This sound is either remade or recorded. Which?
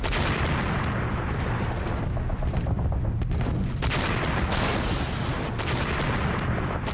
recorded